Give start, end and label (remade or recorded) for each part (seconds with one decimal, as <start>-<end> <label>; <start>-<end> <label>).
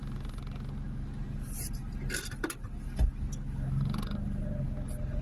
0.0-5.2 recorded